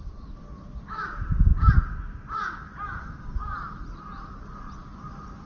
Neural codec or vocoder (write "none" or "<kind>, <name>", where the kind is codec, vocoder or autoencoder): none